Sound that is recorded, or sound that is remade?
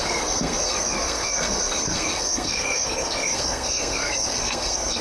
remade